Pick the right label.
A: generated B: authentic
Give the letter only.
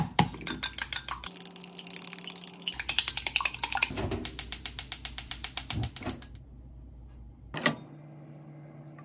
B